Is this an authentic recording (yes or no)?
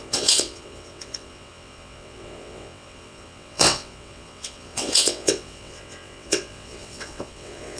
no